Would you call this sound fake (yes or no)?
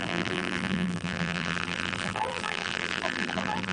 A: yes